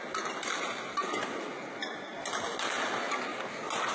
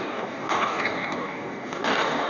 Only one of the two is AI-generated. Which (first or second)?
second